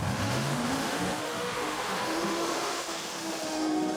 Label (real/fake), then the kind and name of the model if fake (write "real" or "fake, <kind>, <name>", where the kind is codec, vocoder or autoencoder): fake, autoencoder, DAC-VAE